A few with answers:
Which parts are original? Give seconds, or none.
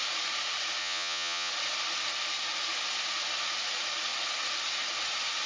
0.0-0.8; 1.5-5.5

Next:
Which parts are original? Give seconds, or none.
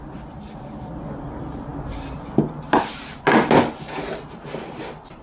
0.0-5.2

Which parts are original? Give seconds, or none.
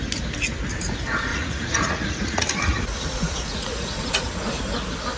0.0-1.3; 4.3-5.2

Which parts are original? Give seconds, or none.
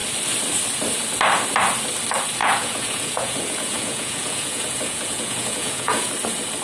0.0-2.4; 6.1-6.6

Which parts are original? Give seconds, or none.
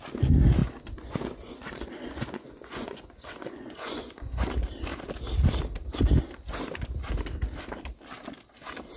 0.0-0.6; 4.5-9.0